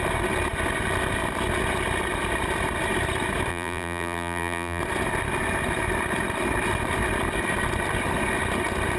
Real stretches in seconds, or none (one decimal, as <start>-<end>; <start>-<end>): 0.0-3.5; 4.8-9.0

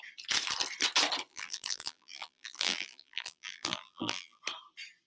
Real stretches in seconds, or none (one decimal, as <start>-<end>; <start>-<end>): 0.0-1.3; 4.4-5.1

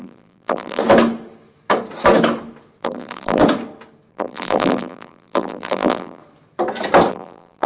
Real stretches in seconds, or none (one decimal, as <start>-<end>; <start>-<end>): 0.8-2.8; 3.4-4.1; 6.2-7.1

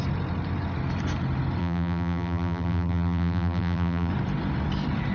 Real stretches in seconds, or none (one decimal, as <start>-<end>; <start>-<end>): 0.0-1.6; 4.1-5.1

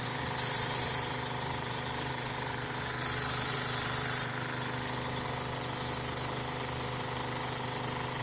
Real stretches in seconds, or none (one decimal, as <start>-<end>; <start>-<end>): 4.3-8.2

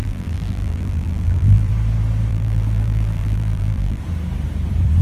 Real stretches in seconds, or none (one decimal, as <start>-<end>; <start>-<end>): 1.7-2.3; 4.0-5.0